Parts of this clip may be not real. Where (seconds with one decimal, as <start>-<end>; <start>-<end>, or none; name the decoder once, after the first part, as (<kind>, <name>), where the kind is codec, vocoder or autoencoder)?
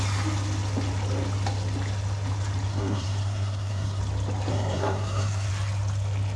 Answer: 2.7-4.0 (codec, SNAC); 4.5-5.5